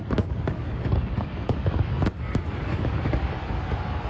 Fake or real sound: fake